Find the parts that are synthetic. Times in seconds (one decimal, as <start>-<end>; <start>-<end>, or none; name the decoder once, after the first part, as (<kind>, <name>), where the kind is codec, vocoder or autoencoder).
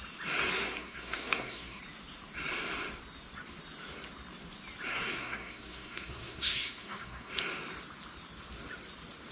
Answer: 0.5-1.8 (codec, SNAC); 4.9-7.3